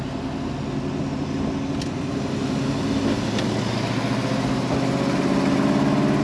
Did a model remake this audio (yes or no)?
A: no